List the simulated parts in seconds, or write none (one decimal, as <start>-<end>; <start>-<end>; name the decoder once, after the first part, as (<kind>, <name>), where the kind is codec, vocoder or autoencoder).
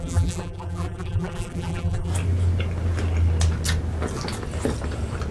0.0-2.1 (vocoder, BigVGAN v2)